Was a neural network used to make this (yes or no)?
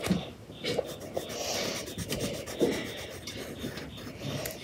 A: no